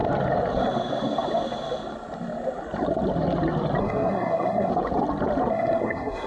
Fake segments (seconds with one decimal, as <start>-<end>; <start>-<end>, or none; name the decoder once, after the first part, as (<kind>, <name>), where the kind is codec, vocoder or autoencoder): 3.8-4.7 (codec, SNAC); 5.5-6.3